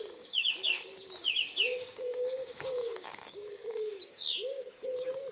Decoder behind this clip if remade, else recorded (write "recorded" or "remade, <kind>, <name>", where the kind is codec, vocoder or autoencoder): remade, codec, DAC